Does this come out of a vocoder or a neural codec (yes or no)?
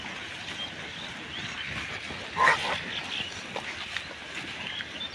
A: no